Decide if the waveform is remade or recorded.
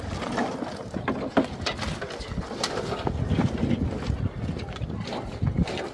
recorded